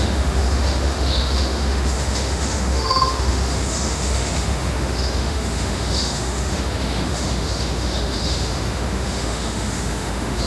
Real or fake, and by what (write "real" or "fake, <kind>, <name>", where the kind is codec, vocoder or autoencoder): fake, autoencoder, DAC-VAE